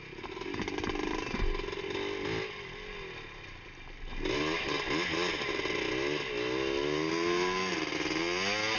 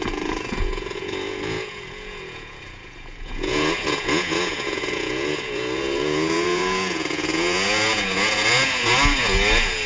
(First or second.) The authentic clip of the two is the first